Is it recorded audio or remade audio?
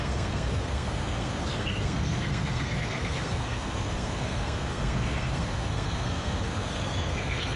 remade